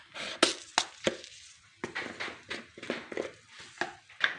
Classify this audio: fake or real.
real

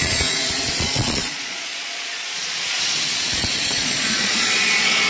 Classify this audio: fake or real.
fake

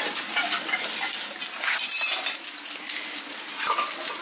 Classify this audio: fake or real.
real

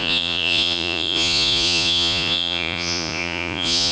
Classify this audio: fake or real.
fake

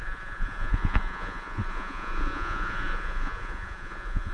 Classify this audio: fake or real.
fake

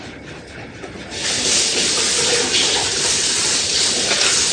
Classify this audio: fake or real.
real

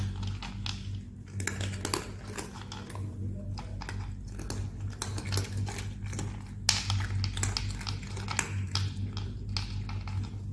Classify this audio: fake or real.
real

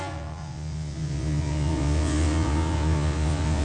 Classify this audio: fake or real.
fake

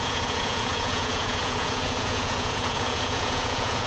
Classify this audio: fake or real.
fake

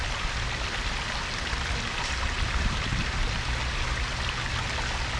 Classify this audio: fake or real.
real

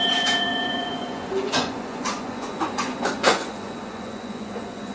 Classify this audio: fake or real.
fake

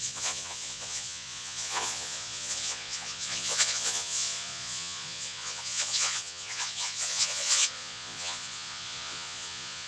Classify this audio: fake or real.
fake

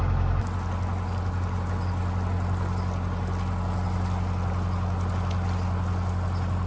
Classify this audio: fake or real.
real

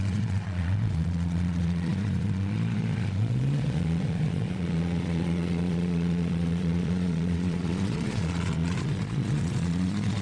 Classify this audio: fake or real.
fake